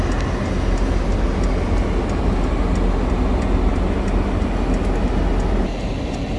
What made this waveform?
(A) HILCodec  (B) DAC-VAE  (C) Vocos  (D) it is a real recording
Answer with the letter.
D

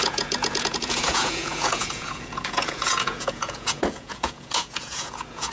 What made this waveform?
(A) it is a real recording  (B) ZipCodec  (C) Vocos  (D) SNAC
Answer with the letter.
C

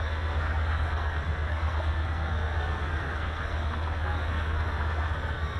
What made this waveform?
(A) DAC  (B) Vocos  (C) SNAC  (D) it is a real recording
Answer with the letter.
C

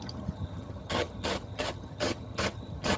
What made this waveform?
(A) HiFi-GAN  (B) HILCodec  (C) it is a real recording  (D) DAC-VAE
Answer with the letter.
A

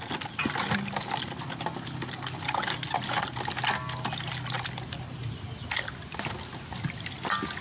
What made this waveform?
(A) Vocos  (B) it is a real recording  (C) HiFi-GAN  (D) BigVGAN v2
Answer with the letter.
B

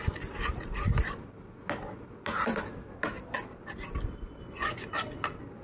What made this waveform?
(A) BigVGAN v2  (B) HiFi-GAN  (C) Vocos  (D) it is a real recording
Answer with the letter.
D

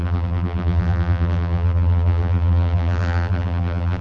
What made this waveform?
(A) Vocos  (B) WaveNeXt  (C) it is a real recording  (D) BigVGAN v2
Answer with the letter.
D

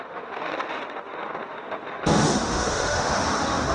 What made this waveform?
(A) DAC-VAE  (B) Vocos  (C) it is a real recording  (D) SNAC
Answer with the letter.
A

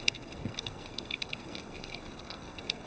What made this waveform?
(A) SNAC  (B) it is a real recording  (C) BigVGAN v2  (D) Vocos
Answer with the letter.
A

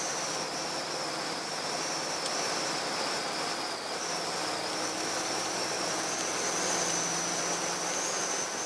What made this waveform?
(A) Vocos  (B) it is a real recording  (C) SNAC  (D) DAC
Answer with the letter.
B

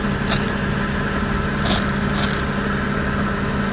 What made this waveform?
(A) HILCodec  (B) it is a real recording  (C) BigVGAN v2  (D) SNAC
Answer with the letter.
B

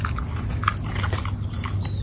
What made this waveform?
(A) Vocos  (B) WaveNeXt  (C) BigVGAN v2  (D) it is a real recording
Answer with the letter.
D